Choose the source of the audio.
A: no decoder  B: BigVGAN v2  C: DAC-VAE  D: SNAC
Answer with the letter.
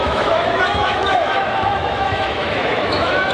C